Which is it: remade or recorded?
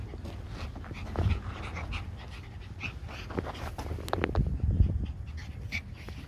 recorded